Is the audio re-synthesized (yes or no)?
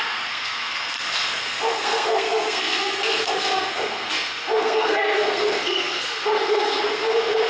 yes